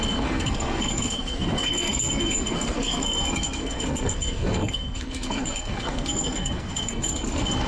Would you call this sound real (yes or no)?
no